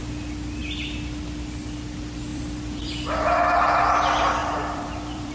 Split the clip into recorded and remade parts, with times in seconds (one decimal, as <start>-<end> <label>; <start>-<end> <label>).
0.0-2.3 recorded; 2.3-3.4 remade; 3.4-4.4 recorded; 4.4-5.3 remade